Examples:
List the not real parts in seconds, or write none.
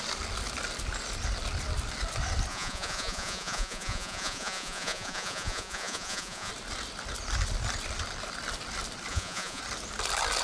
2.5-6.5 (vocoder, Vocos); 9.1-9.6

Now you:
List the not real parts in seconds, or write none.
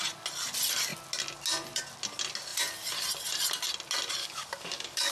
4.2-5.1 (codec, DAC)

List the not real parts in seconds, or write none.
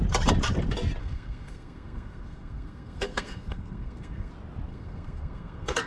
1.0-4.3 (codec, SNAC); 4.7-5.9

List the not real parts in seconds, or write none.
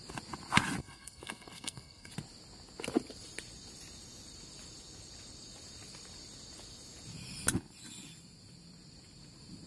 0.8-2.1 (codec, SNAC)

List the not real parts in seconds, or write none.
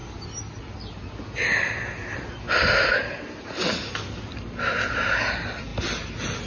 none